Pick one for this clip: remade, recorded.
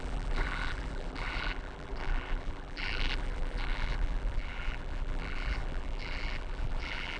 remade